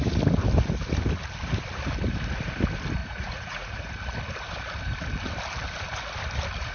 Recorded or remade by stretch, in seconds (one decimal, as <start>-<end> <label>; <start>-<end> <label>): 0.0-3.0 recorded; 3.0-3.9 remade; 3.9-6.7 recorded